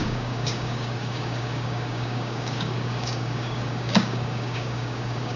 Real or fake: fake